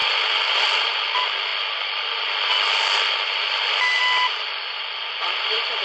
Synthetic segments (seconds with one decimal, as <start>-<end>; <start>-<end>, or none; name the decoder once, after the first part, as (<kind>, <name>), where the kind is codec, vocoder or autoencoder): none